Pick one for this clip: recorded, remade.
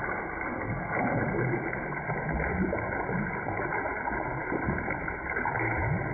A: recorded